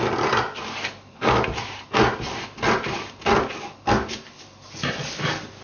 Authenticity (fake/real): real